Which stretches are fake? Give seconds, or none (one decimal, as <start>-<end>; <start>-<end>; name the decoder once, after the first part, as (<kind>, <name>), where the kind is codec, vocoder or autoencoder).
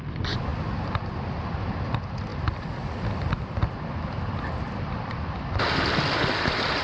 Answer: none